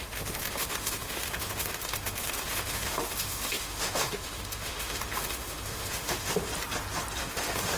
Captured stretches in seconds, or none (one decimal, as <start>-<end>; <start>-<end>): 6.5-7.2